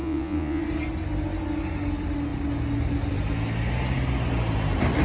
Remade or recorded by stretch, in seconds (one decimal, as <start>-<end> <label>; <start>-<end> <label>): 0.0-0.6 remade; 0.6-5.0 recorded